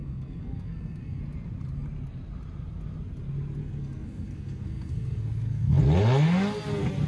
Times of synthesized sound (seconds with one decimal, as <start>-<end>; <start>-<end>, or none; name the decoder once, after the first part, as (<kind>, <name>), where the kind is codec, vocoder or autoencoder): 0.0-1.2 (codec, SNAC); 3.6-5.8